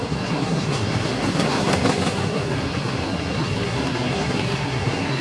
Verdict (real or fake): fake